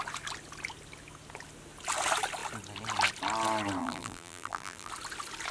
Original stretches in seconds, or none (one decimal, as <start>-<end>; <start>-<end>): 0.0-3.8; 4.9-5.5